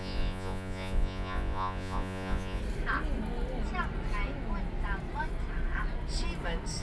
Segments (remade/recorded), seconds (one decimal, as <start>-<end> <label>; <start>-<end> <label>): 0.0-2.6 remade; 2.6-6.8 recorded